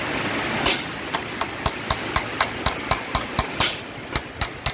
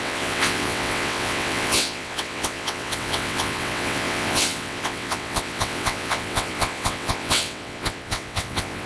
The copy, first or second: second